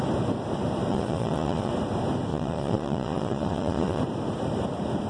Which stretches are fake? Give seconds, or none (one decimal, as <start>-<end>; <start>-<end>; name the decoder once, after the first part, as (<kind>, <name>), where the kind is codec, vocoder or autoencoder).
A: 0.9-1.7 (vocoder, Vocos); 2.3-4.0